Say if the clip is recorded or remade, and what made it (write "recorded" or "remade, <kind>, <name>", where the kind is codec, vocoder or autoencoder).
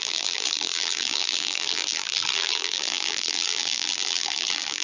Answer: remade, vocoder, BigVGAN v2